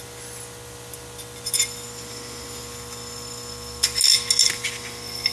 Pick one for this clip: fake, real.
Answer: real